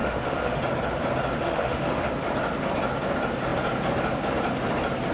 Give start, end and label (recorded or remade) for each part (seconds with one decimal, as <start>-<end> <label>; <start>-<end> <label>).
0.0-0.6 remade; 0.6-1.4 recorded; 1.4-2.1 remade; 2.1-5.1 recorded